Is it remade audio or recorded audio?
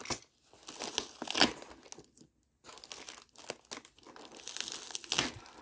recorded